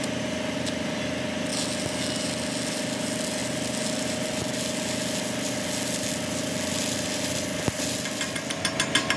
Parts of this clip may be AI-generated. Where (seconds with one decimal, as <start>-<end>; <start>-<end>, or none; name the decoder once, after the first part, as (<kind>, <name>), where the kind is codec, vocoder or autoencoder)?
none